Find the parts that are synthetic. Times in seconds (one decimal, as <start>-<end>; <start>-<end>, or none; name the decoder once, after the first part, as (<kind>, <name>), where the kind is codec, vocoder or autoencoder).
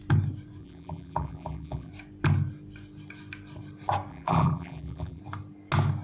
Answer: 0.6-1.9 (vocoder, BigVGAN v2); 4.1-5.2